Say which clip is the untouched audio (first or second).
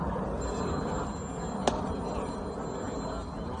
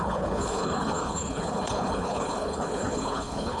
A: first